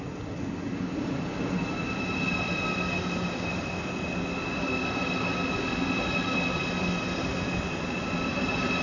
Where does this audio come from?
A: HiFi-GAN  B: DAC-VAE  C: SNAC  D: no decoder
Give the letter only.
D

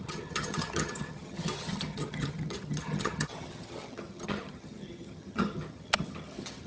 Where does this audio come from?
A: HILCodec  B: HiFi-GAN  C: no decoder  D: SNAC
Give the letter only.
B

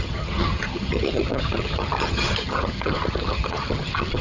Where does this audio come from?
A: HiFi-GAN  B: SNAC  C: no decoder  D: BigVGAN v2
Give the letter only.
A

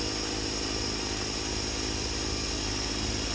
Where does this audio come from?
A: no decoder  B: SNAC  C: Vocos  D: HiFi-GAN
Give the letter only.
A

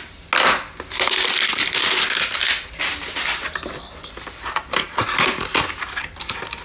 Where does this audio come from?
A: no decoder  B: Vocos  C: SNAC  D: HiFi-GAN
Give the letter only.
A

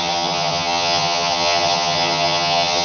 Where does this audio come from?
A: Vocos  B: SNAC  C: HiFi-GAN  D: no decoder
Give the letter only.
C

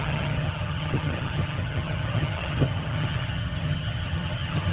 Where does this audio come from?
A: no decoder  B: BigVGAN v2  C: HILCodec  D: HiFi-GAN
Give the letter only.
D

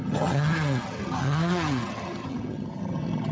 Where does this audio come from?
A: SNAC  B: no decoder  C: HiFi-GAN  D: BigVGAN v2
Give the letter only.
C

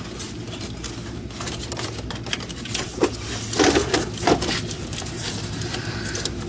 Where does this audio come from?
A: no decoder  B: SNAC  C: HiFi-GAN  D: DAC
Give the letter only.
A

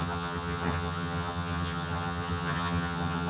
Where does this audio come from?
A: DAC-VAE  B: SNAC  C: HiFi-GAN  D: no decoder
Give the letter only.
C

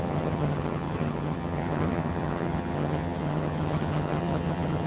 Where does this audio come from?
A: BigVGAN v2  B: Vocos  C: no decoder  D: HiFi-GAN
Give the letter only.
D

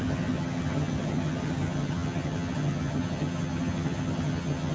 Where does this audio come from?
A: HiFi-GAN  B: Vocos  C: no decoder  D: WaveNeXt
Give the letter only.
A